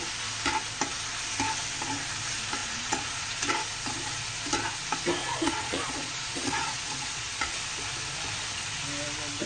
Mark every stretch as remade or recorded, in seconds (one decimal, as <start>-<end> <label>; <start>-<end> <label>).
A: 0.0-2.6 recorded; 2.6-3.4 remade; 3.4-5.2 recorded; 5.2-7.6 remade; 7.6-9.5 recorded